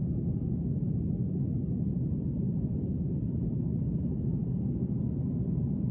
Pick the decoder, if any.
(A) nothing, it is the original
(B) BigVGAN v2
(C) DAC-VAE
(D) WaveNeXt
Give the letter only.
A